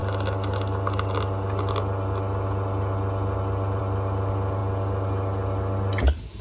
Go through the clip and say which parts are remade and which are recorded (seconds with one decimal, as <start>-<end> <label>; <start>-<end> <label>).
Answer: 0.0-6.4 recorded